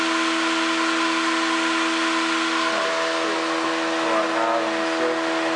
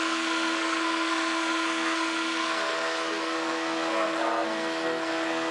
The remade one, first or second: second